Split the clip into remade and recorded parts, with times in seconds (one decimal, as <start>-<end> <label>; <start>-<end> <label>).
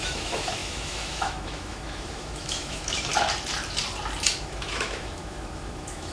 0.0-3.1 remade; 3.1-4.4 recorded; 4.4-6.1 remade